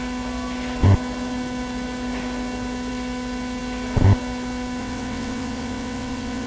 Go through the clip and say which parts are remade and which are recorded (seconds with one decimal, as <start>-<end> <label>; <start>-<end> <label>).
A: 0.0-4.8 recorded; 4.8-6.5 remade